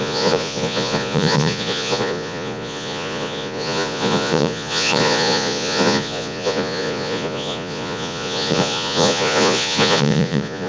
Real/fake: fake